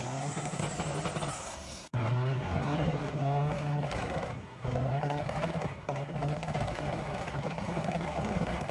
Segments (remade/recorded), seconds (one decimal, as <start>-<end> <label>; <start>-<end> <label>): 0.0-0.6 remade; 0.6-1.3 recorded; 1.3-8.7 remade